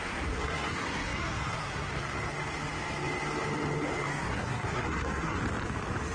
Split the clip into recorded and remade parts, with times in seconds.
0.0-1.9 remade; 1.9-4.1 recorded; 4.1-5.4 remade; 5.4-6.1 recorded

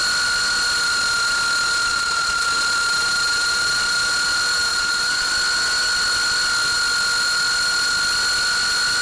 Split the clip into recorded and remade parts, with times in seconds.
0.0-1.9 recorded; 1.9-2.5 remade; 2.5-4.7 recorded; 4.7-5.3 remade; 5.3-9.0 recorded

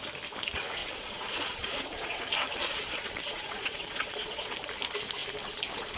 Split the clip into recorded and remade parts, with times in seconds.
0.0-0.8 recorded; 0.8-2.2 remade; 2.2-2.6 recorded; 2.6-4.5 remade; 4.5-6.0 recorded